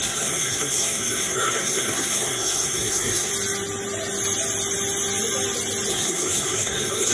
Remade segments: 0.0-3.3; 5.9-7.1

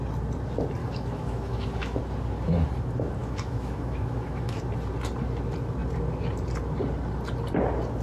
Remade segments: 0.8-2.0; 3.2-4.6

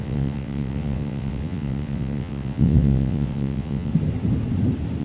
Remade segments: 0.0-3.9

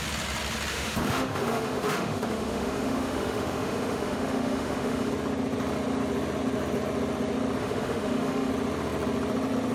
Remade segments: 0.7-5.1; 7.6-8.5

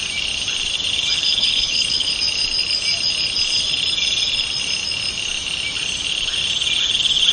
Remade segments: 1.2-2.1

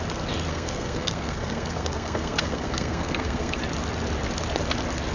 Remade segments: 0.5-3.6